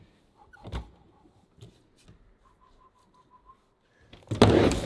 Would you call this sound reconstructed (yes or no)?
no